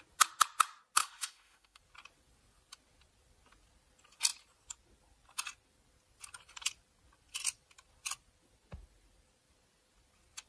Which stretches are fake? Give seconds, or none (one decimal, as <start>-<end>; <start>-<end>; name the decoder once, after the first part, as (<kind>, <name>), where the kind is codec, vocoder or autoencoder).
1.0-1.8 (autoencoder, DAC-VAE)